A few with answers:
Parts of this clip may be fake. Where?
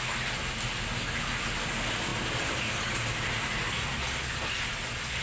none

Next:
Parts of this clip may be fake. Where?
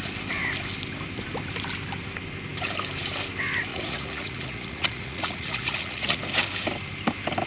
3.7-6.2 (vocoder, Vocos)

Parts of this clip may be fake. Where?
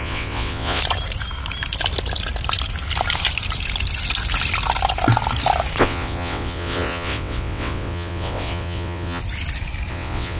0.0-0.8 (vocoder, WaveNeXt); 5.8-9.2; 9.9-10.4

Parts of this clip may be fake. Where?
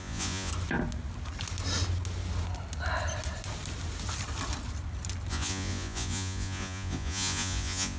0.0-0.5 (vocoder, Vocos); 5.3-8.0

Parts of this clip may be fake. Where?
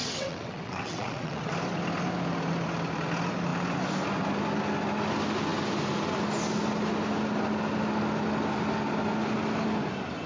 0.0-1.5 (vocoder, WaveNeXt)